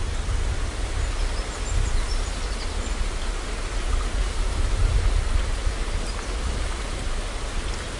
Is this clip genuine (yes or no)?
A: yes